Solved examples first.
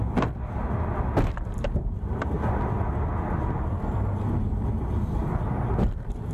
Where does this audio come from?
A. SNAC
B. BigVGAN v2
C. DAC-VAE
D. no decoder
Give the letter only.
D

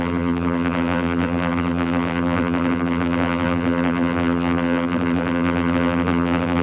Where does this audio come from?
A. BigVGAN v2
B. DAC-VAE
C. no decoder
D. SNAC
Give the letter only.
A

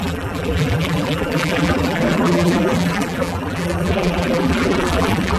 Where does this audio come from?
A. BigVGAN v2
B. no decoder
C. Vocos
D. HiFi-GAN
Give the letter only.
A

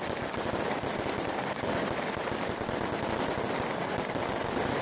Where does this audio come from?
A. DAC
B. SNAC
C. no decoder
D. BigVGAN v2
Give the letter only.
D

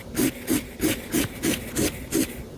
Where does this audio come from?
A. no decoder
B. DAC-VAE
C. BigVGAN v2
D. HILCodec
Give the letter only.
A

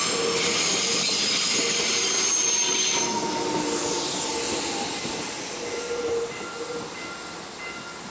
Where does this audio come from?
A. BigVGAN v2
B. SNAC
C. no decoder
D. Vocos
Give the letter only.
C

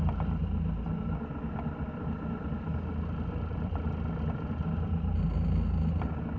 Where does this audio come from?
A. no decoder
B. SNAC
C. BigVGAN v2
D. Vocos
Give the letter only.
A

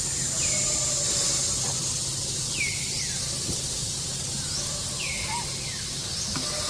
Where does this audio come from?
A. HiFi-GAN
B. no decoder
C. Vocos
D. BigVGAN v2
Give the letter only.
B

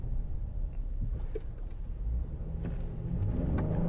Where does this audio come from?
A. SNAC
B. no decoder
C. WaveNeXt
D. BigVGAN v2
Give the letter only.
B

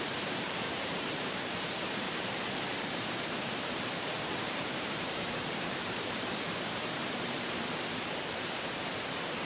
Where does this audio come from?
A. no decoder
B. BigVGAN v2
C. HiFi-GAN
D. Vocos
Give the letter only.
B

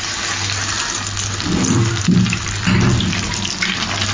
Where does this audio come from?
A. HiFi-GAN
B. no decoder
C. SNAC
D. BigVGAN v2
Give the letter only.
D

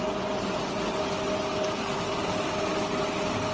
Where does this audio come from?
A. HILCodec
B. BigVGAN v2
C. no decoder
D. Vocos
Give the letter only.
C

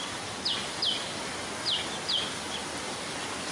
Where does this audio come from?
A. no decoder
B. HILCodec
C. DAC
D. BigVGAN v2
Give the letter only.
A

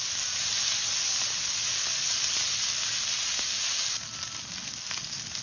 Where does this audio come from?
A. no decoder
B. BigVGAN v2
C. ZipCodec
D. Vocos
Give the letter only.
A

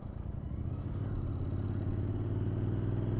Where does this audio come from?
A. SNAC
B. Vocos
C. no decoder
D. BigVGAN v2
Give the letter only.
C